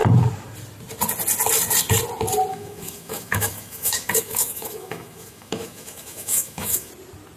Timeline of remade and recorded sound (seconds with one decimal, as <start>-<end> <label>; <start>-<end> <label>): 0.0-2.5 recorded; 2.5-6.9 remade; 6.9-7.4 recorded